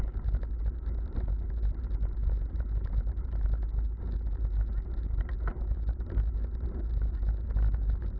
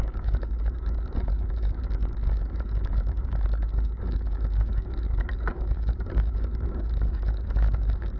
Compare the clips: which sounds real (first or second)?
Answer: first